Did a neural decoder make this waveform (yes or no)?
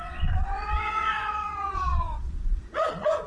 yes